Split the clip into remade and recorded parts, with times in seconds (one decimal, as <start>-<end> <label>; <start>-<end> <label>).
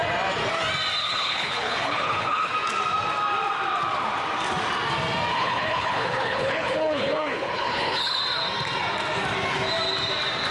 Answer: 0.0-1.0 recorded; 1.0-2.5 remade; 2.5-5.3 recorded; 5.3-8.2 remade; 8.2-10.5 recorded